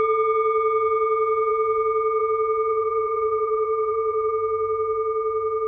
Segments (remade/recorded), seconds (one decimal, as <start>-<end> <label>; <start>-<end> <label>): 0.0-2.7 recorded; 2.7-4.3 remade; 4.3-5.7 recorded